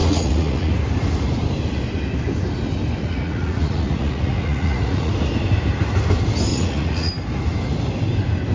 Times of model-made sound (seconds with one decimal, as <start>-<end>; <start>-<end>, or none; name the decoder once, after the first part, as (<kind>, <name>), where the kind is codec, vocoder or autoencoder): 0.0-0.7 (vocoder, Vocos); 3.0-5.1; 6.5-7.1